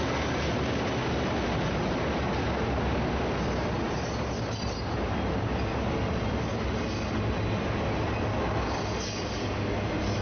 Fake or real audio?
real